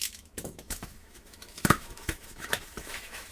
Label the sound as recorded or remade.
remade